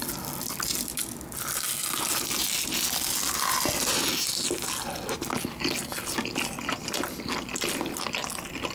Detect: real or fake real